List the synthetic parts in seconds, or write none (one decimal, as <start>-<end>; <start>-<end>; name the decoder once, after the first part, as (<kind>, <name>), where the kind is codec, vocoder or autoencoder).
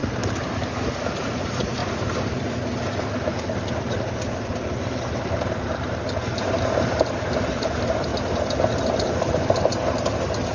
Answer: 1.0-1.8 (vocoder, BigVGAN v2); 7.0-8.1; 8.8-10.5